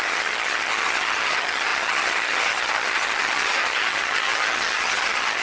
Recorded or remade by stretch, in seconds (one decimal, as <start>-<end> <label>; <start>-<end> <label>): 0.0-5.4 remade